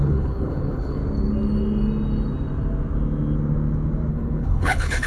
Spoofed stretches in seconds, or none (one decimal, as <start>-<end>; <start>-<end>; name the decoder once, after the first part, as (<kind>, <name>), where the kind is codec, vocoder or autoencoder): 0.0-1.0 (codec, HILCodec); 4.1-5.1